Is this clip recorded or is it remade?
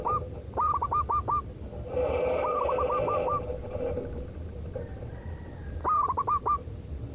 recorded